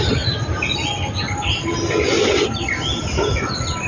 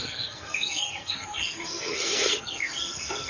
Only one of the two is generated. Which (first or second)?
second